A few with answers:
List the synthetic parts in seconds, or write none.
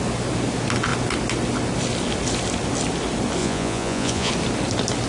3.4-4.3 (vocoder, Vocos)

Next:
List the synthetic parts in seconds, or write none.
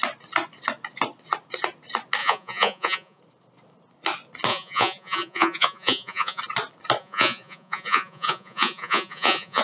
2.2-3.2 (vocoder, Vocos); 4.5-6.4; 7.0-9.6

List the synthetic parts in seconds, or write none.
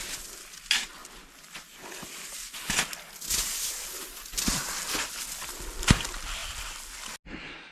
none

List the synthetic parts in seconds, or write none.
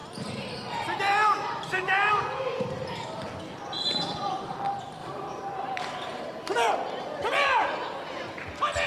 0.0-2.1 (vocoder, BigVGAN v2); 5.0-6.7; 7.2-8.5